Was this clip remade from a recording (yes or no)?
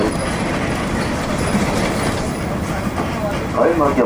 yes